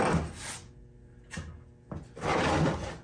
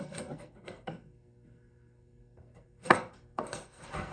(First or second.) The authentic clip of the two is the first